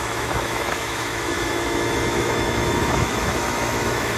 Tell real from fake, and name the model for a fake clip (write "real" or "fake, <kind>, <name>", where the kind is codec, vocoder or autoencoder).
fake, autoencoder, DAC-VAE